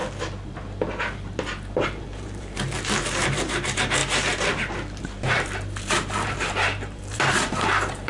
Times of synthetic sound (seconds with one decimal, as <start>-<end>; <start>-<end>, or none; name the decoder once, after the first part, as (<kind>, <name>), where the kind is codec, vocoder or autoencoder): 1.0-4.0 (vocoder, BigVGAN v2); 5.0-8.1